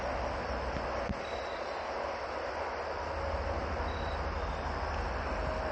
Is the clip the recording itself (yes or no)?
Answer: yes